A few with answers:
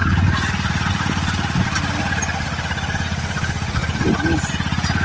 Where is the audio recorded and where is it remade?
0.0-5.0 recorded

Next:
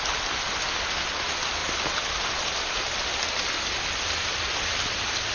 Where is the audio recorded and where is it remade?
0.0-5.3 recorded

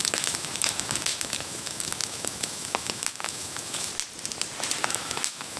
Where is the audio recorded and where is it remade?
0.0-3.9 remade; 3.9-4.8 recorded; 4.8-5.6 remade

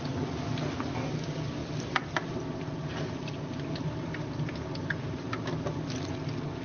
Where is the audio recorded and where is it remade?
0.0-6.6 recorded